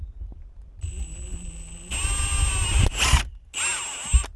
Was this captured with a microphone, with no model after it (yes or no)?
yes